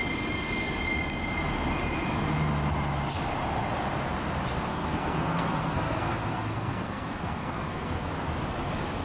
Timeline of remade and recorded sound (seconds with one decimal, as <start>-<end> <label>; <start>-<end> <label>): 0.0-4.7 recorded; 4.7-8.1 remade; 8.1-9.0 recorded